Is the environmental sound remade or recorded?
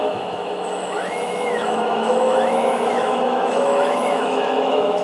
remade